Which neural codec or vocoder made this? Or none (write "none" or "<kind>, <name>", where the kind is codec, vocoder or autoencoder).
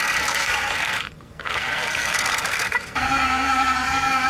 codec, SNAC